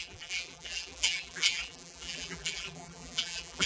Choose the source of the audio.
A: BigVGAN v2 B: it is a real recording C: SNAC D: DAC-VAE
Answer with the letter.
A